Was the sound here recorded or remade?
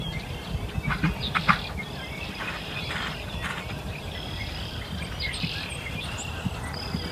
recorded